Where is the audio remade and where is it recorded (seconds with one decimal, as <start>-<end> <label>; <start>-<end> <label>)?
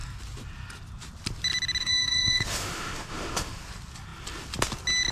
0.0-1.8 recorded; 1.8-3.6 remade; 3.6-5.1 recorded